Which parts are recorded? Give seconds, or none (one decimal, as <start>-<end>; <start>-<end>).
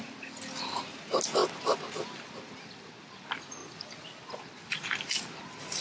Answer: 0.0-3.6; 4.4-5.8